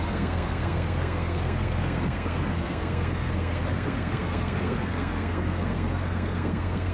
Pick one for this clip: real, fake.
fake